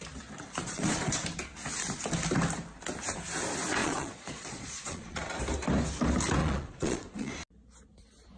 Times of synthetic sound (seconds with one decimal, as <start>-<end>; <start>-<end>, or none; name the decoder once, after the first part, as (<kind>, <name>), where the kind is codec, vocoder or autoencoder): 0.6-1.1 (vocoder, Vocos); 3.8-5.2; 6.4-7.3